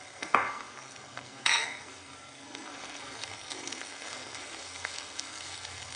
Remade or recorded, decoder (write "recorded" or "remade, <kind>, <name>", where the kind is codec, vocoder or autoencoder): remade, codec, SNAC